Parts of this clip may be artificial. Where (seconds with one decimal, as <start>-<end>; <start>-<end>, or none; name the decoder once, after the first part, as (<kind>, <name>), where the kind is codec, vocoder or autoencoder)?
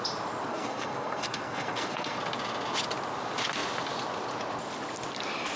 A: 0.5-2.2 (codec, SNAC)